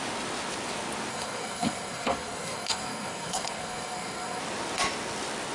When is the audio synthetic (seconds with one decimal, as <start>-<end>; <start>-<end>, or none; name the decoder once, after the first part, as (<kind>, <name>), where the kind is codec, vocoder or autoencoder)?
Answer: 1.1-4.4 (codec, SNAC)